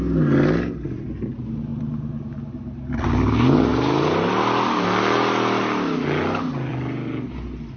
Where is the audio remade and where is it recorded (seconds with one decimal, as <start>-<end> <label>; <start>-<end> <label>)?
0.0-7.8 recorded